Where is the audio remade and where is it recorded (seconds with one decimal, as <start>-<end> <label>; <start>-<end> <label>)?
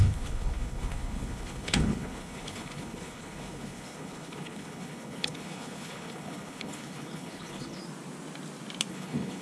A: 0.0-7.8 remade; 7.8-8.9 recorded; 8.9-9.4 remade